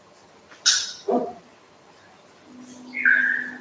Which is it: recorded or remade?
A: recorded